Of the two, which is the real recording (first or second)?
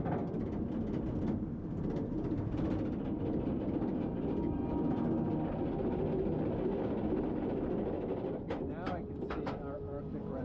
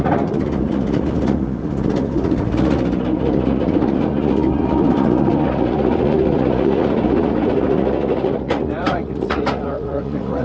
first